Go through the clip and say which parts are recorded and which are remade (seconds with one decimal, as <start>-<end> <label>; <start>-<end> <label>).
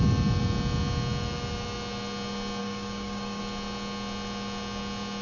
0.0-2.6 recorded; 2.6-3.4 remade; 3.4-5.2 recorded